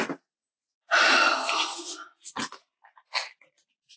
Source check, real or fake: real